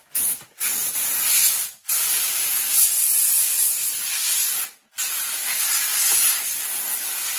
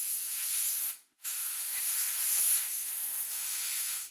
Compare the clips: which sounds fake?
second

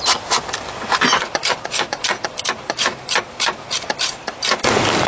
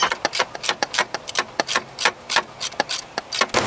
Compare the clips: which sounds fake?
first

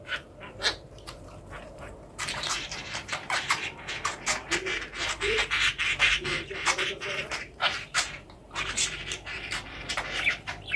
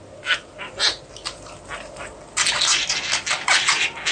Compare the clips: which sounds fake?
first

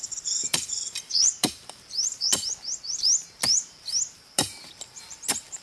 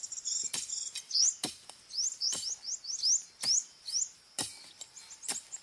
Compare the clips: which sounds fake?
first